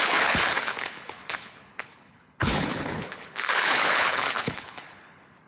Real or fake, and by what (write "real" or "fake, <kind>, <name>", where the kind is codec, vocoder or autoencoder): fake, codec, HILCodec